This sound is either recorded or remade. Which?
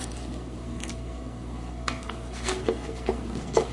remade